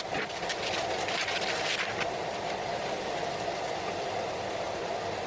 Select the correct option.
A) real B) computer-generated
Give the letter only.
A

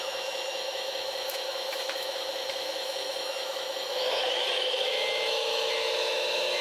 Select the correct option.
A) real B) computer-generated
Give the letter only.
B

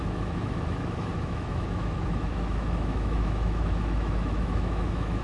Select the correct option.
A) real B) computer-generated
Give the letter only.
B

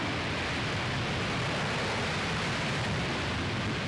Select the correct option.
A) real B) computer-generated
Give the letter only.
A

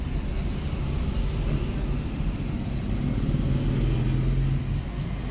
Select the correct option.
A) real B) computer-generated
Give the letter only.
A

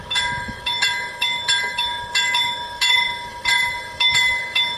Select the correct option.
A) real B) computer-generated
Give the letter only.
B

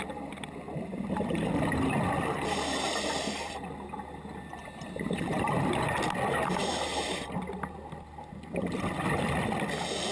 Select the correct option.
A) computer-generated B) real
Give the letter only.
B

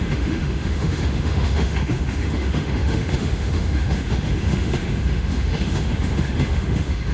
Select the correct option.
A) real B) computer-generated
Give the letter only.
B